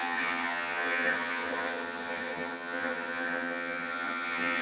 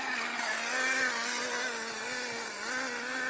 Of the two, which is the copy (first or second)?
first